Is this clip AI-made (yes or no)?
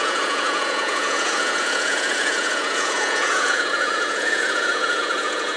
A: yes